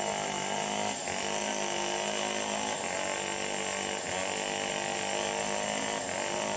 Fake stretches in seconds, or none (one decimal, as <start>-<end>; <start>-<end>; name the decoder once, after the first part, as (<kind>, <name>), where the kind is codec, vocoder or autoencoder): none